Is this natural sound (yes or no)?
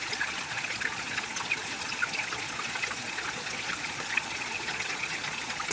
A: no